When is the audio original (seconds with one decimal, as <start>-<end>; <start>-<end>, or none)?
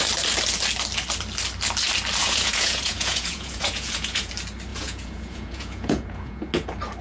0.0-2.2; 4.3-4.7; 6.5-7.0